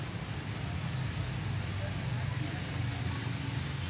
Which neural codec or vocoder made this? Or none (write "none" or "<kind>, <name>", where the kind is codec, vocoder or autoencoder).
none